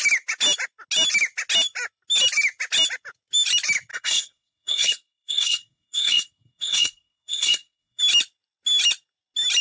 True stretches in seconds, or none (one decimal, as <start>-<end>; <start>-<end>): 0.0-3.9; 8.0-9.6